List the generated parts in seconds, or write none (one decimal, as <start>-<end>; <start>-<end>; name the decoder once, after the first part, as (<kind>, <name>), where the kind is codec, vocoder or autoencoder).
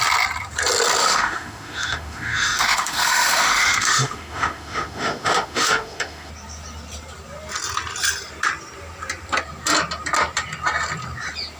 1.0-6.3 (autoencoder, DAC-VAE)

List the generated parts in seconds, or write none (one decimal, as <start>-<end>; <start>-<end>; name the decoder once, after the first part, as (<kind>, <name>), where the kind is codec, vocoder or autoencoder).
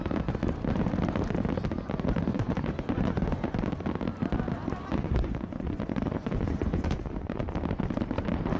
2.3-3.7 (vocoder, Vocos); 4.9-7.4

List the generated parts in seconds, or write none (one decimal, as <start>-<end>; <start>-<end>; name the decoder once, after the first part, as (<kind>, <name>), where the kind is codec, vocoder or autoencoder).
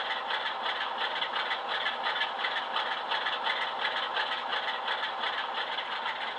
none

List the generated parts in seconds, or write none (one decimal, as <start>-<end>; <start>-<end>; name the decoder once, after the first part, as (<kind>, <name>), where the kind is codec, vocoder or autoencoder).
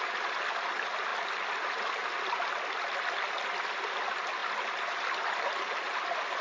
none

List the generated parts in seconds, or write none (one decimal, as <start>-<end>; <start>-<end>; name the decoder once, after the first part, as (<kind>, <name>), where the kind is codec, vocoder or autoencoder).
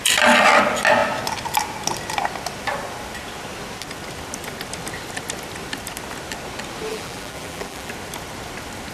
6.9-7.9 (vocoder, BigVGAN v2)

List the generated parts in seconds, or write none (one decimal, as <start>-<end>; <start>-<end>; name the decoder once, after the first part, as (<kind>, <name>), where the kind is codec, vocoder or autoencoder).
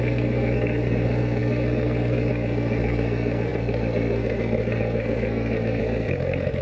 0.0-6.6 (codec, SNAC)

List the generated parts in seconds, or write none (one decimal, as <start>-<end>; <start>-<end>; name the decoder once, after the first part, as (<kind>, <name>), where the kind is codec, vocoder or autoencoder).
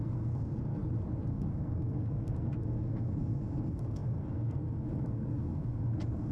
0.0-0.8 (codec, SNAC); 1.3-6.3